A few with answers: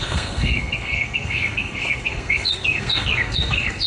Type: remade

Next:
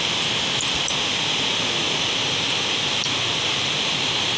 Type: recorded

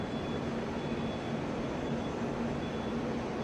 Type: recorded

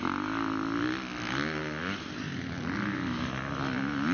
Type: recorded